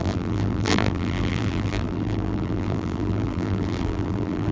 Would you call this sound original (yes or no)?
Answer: no